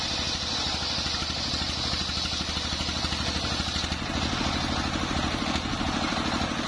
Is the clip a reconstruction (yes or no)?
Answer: no